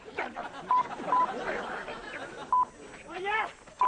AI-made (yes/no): no